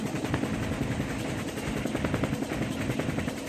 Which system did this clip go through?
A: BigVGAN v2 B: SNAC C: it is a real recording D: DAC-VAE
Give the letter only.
C